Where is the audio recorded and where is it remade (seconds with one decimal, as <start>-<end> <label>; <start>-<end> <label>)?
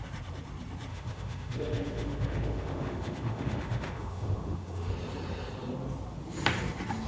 0.0-0.9 recorded; 0.9-4.9 remade; 4.9-7.1 recorded